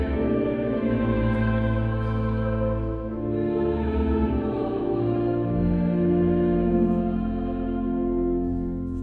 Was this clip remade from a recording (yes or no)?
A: yes